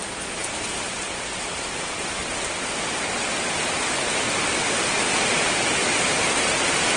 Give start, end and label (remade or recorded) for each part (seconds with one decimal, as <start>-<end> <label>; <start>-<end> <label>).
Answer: 0.0-7.0 recorded